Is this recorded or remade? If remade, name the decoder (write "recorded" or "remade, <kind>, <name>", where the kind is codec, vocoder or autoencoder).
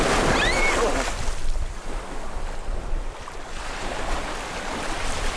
recorded